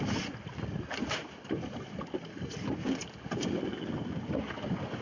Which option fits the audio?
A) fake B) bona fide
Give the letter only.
B